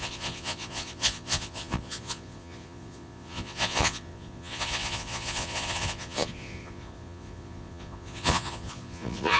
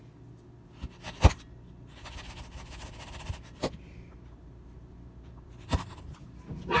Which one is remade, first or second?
first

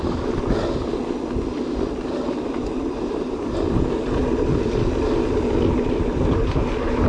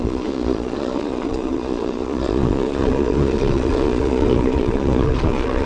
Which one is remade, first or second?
second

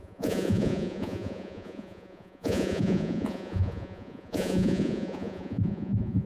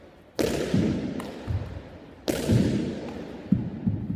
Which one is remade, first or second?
first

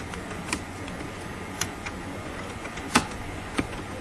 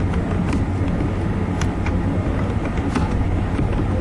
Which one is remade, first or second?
first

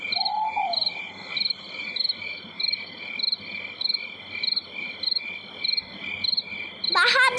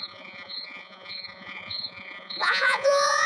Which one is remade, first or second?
second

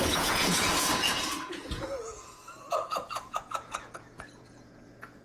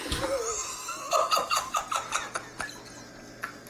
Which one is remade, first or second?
first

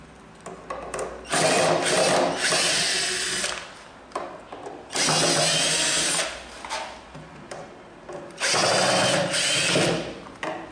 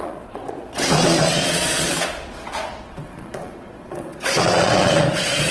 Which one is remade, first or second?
second